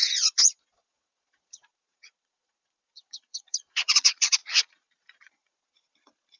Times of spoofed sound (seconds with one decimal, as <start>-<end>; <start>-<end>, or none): 0.0-6.4